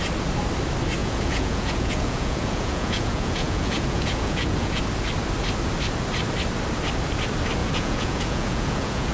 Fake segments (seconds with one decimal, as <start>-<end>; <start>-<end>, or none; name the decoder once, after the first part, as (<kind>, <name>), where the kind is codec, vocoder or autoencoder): 1.0-4.8 (vocoder, Vocos); 7.6-9.1